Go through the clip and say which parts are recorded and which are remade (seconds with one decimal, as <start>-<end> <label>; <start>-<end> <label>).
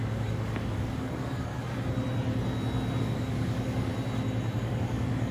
0.0-1.5 remade; 1.5-3.0 recorded; 3.0-3.9 remade; 3.9-4.6 recorded; 4.6-5.3 remade